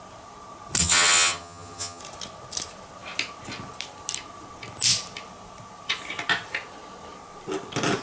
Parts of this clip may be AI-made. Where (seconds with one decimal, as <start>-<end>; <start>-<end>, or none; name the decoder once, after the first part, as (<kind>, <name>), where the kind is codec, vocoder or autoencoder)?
0.8-2.0 (vocoder, HiFi-GAN)